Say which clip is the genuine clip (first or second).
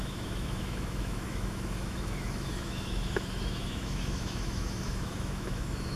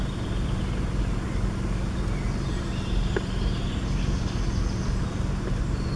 second